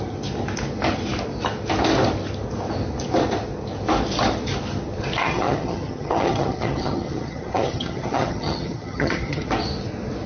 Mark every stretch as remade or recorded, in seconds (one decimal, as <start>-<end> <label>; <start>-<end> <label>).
0.0-5.2 recorded; 5.2-9.5 remade; 9.5-10.3 recorded